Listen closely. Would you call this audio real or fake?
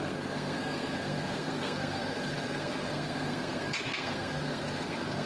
fake